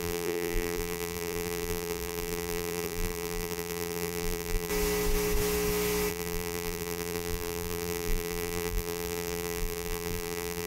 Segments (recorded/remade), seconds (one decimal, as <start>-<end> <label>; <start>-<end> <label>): 0.0-4.7 remade; 4.7-6.1 recorded; 6.1-10.7 remade